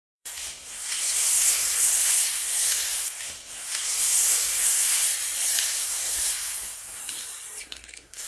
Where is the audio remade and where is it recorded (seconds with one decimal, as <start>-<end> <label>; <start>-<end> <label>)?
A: 0.0-5.1 remade; 5.1-5.6 recorded; 5.6-7.0 remade; 7.0-7.6 recorded; 7.6-8.3 remade